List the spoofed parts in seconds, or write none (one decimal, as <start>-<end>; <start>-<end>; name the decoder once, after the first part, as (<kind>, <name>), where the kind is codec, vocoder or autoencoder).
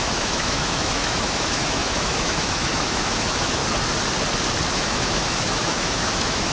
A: 0.0-3.6 (autoencoder, DAC-VAE); 4.7-6.5